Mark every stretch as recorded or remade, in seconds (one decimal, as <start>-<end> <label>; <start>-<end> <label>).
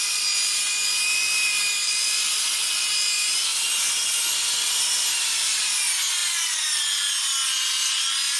0.0-8.4 recorded